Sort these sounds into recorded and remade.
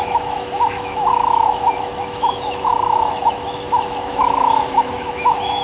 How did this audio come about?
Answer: remade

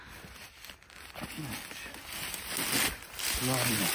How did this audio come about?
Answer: recorded